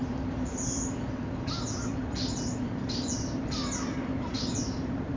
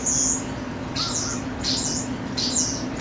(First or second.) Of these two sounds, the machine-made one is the first